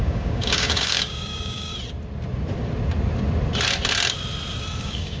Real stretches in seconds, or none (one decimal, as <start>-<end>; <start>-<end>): 1.7-4.8